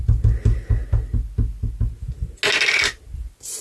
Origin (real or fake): real